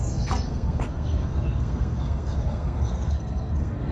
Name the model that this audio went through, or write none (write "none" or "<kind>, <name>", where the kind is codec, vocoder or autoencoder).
codec, SNAC